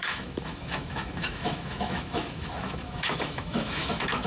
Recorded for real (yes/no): no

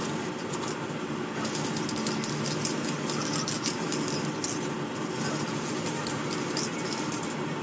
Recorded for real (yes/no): yes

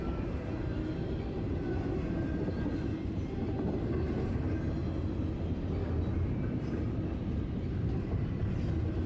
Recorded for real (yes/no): yes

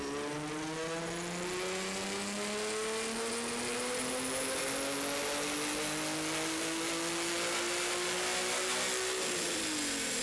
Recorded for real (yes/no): yes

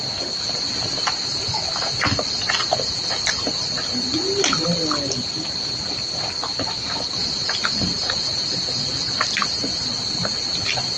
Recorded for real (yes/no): no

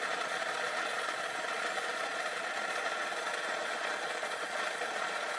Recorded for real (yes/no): no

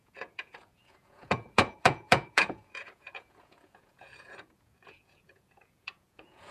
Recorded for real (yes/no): no